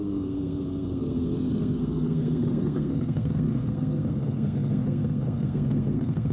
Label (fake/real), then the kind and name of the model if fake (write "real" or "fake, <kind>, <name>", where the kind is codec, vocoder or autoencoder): fake, codec, SNAC